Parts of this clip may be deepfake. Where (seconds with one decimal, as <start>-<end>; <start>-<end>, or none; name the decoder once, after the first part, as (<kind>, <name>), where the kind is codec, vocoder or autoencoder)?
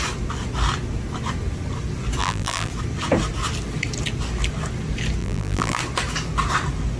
2.2-2.7 (vocoder, BigVGAN v2); 5.2-5.8